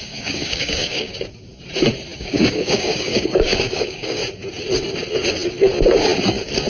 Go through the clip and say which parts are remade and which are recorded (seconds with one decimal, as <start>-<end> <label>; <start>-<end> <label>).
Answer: 0.0-1.1 remade; 1.1-2.2 recorded; 2.2-4.2 remade; 4.2-6.7 recorded